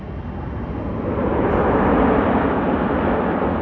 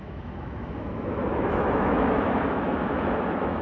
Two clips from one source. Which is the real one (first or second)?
first